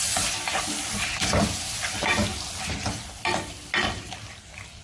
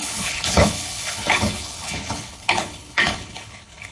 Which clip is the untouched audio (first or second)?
first